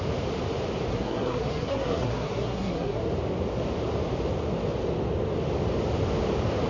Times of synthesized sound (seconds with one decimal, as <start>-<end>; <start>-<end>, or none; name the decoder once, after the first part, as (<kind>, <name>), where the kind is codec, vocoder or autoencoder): 0.9-3.1 (codec, SNAC)